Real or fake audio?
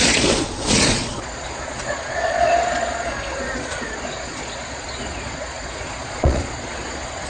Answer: fake